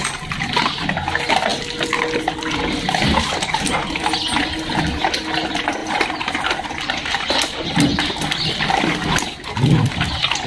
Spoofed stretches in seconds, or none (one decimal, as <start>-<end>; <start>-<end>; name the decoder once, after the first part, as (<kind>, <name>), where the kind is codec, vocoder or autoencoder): none

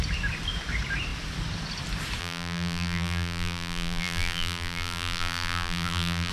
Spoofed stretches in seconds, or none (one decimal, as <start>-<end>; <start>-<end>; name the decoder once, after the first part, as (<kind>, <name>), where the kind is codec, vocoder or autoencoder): 2.2-6.3 (vocoder, BigVGAN v2)

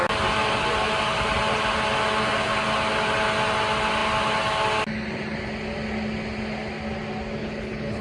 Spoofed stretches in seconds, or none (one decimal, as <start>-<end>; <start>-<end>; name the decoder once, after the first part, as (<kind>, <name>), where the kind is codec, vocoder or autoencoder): 7.4-8.0 (codec, HILCodec)

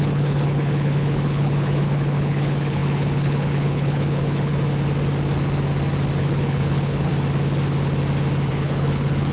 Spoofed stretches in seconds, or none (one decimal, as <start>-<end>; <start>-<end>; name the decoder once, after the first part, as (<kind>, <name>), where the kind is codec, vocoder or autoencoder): 0.0-4.5 (codec, HILCodec); 6.2-7.1; 8.5-9.3

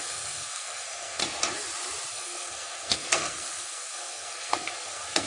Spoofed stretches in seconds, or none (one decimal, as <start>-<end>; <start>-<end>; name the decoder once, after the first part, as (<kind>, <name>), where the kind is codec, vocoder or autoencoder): 0.0-1.2 (codec, SNAC); 2.1-5.3

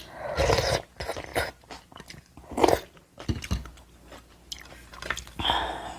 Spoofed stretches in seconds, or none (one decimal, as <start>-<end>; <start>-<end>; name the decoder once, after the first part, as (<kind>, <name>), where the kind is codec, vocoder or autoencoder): none

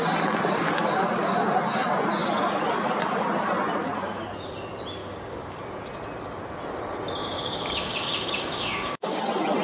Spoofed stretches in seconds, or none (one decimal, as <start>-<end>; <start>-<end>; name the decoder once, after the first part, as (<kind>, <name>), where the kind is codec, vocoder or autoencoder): 5.0-5.6 (codec, DAC); 7.2-9.2